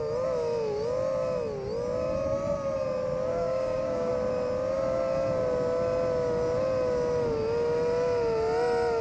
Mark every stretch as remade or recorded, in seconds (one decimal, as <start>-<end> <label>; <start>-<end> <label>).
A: 0.0-3.3 recorded; 3.3-4.1 remade; 4.1-9.0 recorded